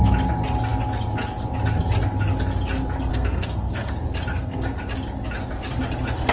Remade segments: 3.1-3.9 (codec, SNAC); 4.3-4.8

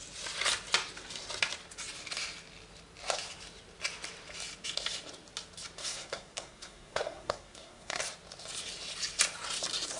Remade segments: 5.8-8.0 (codec, SNAC)

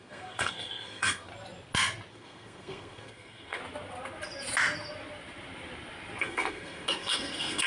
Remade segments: 0.0-1.3 (codec, SNAC); 2.1-3.6; 6.2-7.7